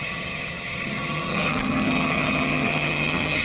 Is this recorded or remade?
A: remade